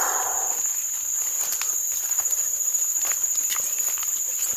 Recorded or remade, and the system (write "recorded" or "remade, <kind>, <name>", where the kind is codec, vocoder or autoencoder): recorded